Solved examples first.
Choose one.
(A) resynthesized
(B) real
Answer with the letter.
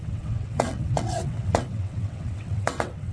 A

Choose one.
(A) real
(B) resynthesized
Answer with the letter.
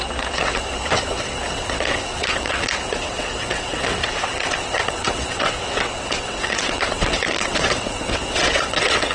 B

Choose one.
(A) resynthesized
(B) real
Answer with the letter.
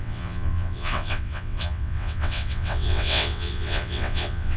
A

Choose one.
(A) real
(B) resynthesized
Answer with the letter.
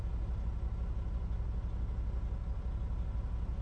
A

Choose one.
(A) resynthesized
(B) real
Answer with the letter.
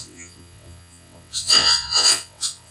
A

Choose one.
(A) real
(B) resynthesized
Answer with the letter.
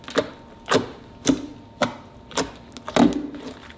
A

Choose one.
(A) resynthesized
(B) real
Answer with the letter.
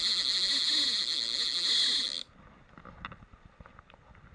B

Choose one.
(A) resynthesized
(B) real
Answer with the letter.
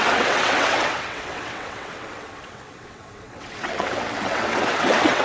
A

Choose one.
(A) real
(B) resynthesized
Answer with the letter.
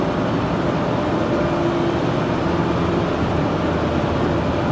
A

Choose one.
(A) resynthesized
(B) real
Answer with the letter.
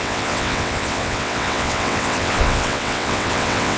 A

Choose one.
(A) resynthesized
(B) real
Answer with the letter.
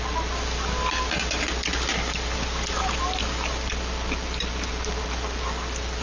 B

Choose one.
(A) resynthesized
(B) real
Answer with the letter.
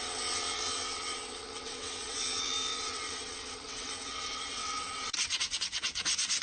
A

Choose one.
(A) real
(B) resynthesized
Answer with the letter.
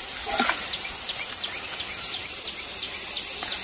A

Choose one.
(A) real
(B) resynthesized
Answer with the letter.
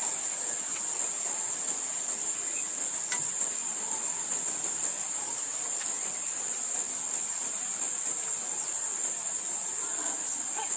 A